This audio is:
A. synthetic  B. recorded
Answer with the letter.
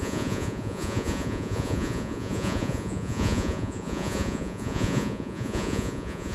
A